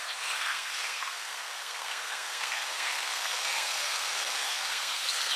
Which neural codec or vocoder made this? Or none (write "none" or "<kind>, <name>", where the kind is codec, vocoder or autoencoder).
codec, SNAC